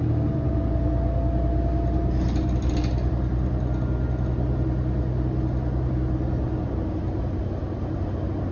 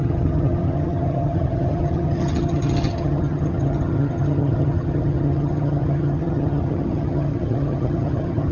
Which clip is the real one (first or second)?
first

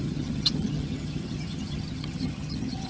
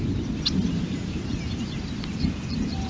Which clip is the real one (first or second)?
second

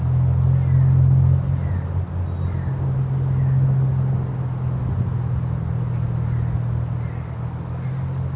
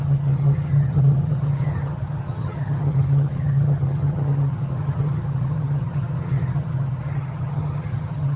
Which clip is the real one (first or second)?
first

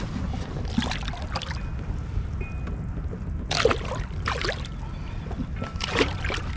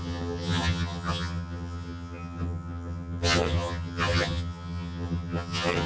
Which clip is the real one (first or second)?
first